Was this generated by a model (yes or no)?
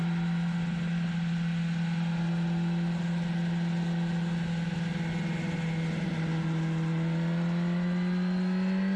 no